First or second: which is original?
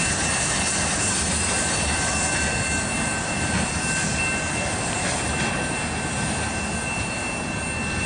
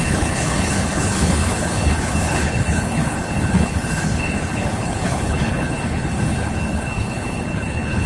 first